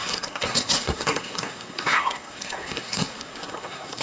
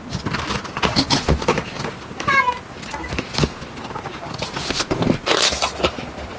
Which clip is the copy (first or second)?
first